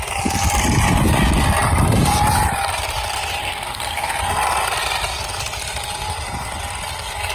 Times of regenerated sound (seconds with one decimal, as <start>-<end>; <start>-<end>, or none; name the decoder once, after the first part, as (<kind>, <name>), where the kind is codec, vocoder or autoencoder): 3.4-4.2 (codec, SNAC)